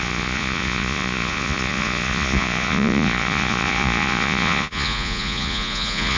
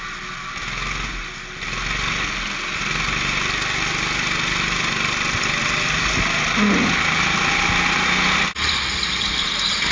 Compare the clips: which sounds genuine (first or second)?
second